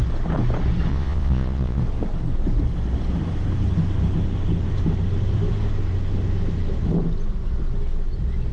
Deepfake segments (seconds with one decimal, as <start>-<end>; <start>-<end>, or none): 0.9-1.8